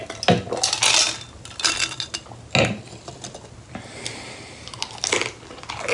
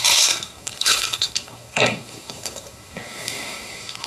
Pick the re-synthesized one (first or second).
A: second